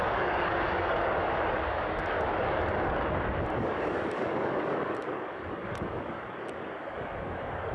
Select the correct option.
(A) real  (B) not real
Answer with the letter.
B